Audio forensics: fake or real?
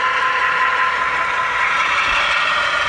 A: real